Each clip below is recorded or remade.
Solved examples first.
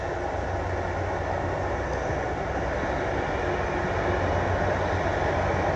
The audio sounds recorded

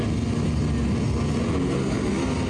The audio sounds recorded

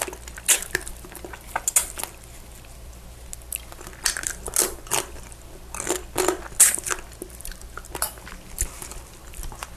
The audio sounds recorded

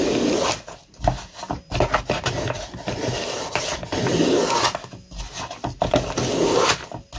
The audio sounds recorded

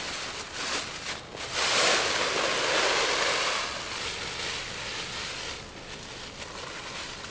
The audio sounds recorded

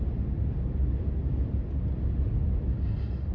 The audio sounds recorded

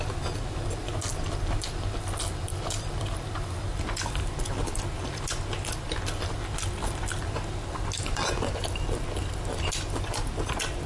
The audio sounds recorded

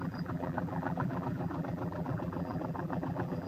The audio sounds remade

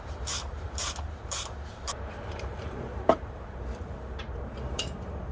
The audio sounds remade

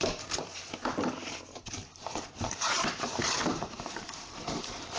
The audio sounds remade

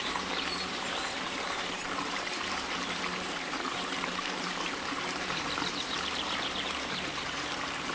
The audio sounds remade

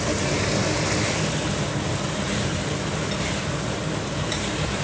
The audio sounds recorded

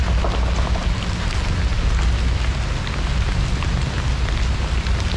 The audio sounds recorded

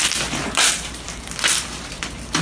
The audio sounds remade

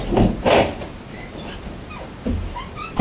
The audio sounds recorded